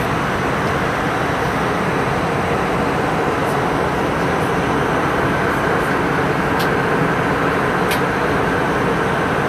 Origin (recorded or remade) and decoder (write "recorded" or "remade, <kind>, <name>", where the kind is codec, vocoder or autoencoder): recorded